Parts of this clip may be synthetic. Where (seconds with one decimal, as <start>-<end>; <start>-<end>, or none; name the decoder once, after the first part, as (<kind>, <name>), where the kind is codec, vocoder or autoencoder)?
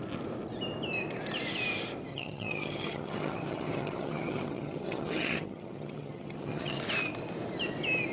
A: 2.1-6.8 (vocoder, HiFi-GAN)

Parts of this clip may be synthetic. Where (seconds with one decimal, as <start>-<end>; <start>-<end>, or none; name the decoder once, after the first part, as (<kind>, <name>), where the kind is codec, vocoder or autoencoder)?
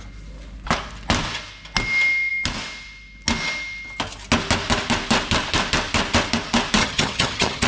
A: 6.8-7.7 (vocoder, HiFi-GAN)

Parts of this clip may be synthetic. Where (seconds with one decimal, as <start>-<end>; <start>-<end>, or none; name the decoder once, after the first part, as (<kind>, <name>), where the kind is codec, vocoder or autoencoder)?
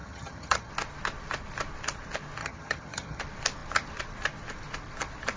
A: 0.0-0.7 (vocoder, HiFi-GAN); 2.4-3.2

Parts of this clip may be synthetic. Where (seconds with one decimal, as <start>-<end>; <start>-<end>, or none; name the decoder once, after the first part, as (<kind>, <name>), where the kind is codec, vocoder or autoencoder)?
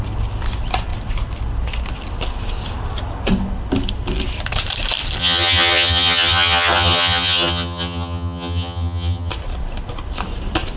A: 5.2-9.3 (vocoder, HiFi-GAN)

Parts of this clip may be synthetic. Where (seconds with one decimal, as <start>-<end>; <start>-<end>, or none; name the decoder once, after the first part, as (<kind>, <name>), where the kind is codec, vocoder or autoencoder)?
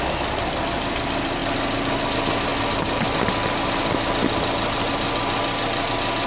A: none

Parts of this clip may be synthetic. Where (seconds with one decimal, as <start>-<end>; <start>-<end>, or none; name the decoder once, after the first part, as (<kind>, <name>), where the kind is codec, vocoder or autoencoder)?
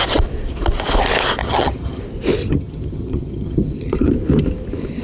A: 1.4-2.0 (vocoder, HiFi-GAN); 2.4-4.1